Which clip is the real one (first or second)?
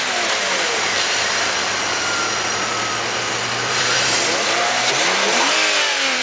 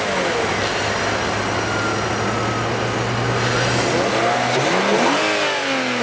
second